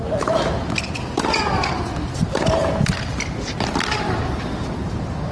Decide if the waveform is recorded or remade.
recorded